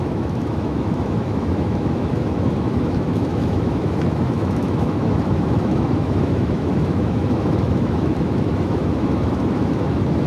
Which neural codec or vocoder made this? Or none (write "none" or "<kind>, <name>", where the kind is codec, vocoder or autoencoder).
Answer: autoencoder, DAC-VAE